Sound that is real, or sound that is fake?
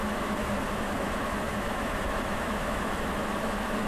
fake